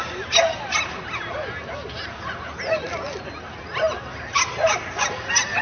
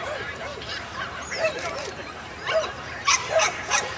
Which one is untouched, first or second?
first